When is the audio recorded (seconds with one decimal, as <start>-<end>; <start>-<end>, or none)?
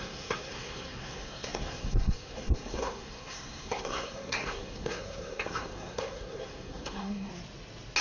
7.3-8.0